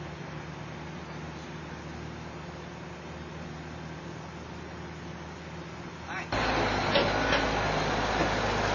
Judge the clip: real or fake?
real